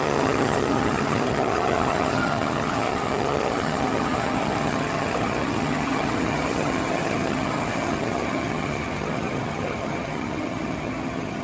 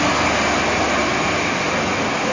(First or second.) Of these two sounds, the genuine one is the second